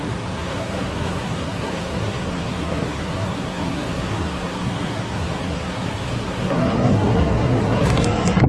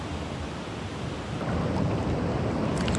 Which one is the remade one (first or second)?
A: first